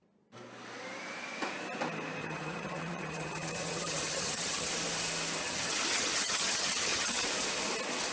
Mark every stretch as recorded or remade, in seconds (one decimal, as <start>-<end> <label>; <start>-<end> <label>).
0.0-2.2 recorded; 2.2-4.7 remade; 4.7-5.4 recorded; 5.4-7.2 remade; 7.2-8.1 recorded